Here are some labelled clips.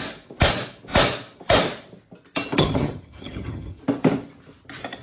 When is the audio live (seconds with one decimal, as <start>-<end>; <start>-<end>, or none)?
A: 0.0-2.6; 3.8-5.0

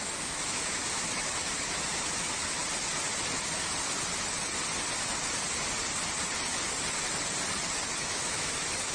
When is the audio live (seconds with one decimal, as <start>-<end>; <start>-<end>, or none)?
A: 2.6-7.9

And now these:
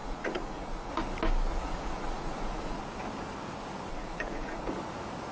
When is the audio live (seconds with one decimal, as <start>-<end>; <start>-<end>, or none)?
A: 0.9-1.5; 2.8-3.9; 4.7-5.3